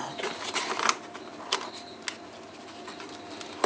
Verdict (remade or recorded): recorded